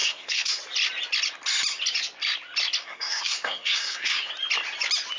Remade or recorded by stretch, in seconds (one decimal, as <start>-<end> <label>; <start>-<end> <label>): 0.0-0.6 remade; 0.6-2.8 recorded; 2.8-4.3 remade; 4.3-5.2 recorded